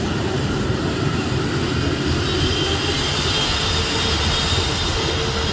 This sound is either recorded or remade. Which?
recorded